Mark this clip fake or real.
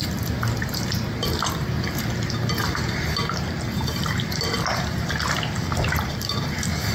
real